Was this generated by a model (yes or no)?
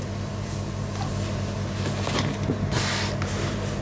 no